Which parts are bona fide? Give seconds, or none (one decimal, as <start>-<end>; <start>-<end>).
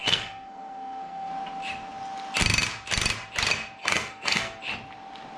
1.3-3.8; 4.6-5.4